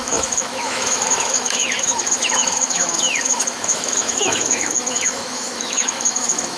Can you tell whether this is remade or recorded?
remade